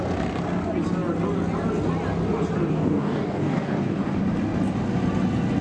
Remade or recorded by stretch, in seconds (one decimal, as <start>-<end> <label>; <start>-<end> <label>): 0.0-2.7 recorded; 2.7-4.2 remade; 4.2-5.6 recorded